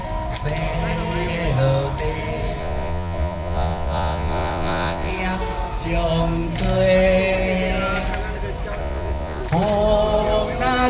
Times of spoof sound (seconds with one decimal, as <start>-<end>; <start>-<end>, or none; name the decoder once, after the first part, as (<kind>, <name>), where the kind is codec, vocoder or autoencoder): 2.6-5.1 (vocoder, Vocos); 8.8-9.4